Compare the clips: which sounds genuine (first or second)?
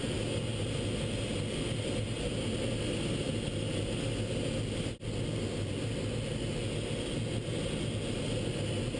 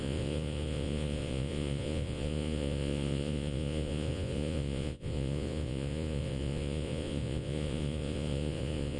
first